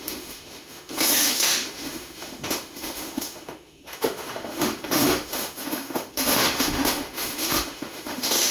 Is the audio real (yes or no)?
no